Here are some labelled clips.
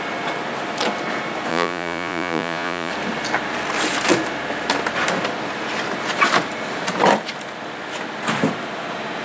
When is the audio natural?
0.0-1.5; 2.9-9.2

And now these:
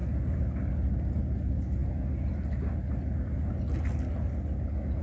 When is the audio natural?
0.0-5.0

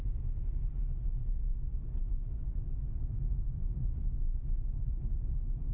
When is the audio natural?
0.0-5.7

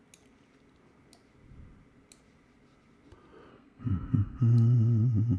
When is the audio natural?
0.0-3.5; 4.4-5.4

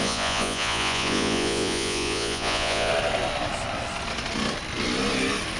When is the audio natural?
2.9-5.6